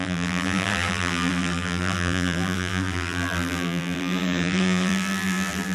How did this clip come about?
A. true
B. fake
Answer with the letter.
B